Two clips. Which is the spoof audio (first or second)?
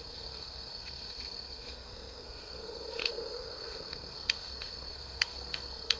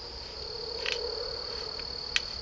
first